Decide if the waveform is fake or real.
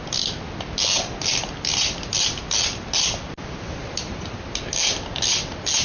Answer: real